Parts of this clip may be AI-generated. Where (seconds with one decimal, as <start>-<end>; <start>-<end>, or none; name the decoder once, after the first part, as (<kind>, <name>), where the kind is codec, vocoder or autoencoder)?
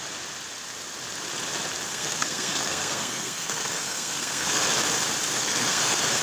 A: 1.9-4.6 (codec, SNAC); 5.3-6.2